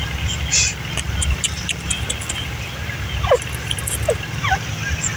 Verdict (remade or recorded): recorded